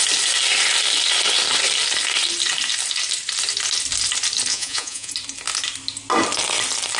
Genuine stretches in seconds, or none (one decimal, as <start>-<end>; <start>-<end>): 0.0-4.5; 5.1-7.0